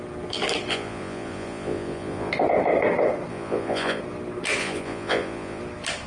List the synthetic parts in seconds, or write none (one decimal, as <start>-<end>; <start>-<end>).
0.7-2.3; 3.3-4.0; 4.6-5.6